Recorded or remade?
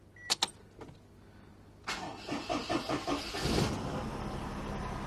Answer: recorded